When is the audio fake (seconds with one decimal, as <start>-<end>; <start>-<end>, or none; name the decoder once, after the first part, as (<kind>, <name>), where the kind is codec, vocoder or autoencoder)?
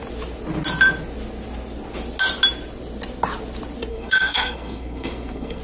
3.9-5.6 (codec, SNAC)